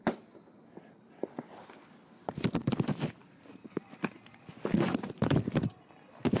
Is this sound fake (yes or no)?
yes